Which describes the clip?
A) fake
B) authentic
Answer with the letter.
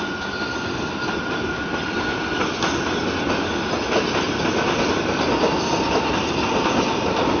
B